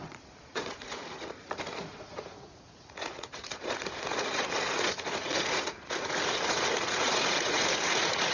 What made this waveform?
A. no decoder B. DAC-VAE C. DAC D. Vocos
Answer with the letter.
D